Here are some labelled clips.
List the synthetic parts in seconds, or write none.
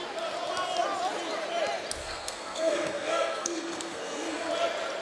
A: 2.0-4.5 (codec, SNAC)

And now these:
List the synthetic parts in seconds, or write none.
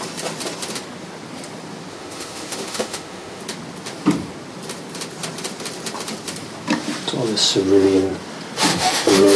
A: 1.9-3.4 (autoencoder, DAC-VAE); 8.7-9.4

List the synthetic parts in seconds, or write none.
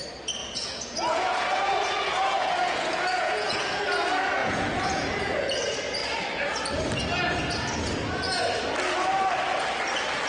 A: 0.4-3.8 (vocoder, Vocos); 4.4-5.6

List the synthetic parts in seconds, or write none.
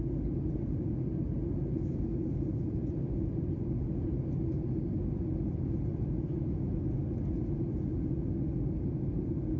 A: none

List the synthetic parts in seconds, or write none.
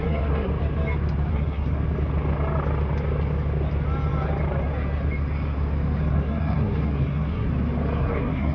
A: 0.0-0.5 (codec, SNAC); 1.3-1.8; 6.0-7.5; 8.0-8.5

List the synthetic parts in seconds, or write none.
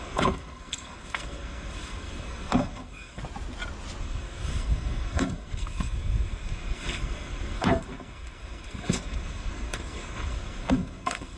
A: 0.0-3.2 (codec, SNAC); 4.0-11.4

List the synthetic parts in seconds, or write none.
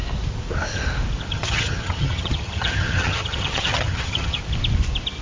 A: 1.3-4.4 (vocoder, HiFi-GAN)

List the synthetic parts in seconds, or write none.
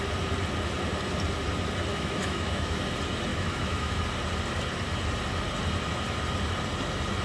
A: 1.9-2.8 (autoencoder, DAC-VAE); 3.3-4.0